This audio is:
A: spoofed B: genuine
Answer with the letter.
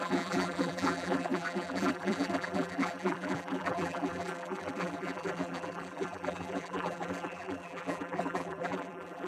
A